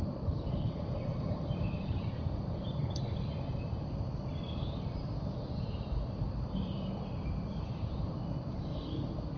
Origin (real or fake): fake